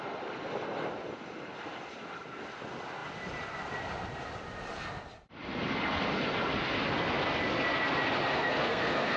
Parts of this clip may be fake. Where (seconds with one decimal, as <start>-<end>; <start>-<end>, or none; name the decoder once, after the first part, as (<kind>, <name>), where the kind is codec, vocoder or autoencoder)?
8.3-9.2 (codec, SNAC)